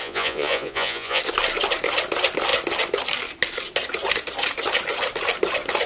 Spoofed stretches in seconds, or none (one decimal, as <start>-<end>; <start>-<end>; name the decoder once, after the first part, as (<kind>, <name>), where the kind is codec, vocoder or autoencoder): 0.0-1.2 (vocoder, Vocos)